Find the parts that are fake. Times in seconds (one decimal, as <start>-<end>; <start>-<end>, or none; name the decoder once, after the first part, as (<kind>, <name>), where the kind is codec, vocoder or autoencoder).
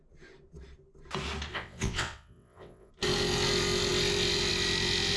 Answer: 1.5-2.9 (vocoder, WaveNeXt)